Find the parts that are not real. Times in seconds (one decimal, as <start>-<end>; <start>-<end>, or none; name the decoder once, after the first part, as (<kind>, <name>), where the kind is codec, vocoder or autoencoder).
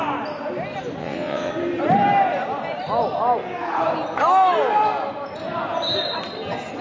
1.0-1.5 (vocoder, WaveNeXt)